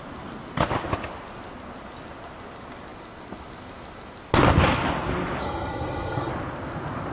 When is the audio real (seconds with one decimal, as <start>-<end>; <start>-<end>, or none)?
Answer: 0.0-5.4; 6.3-7.1